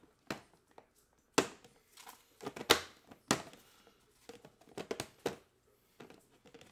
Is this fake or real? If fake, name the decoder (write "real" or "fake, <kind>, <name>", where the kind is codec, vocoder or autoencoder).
real